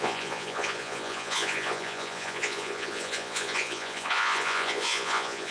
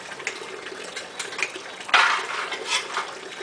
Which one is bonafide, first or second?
second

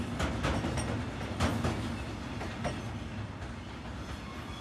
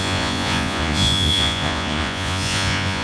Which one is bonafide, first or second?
first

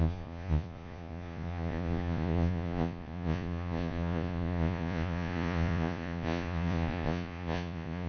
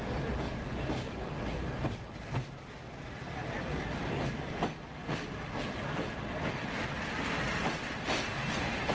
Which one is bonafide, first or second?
second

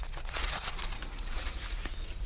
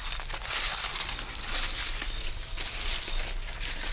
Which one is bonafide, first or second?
second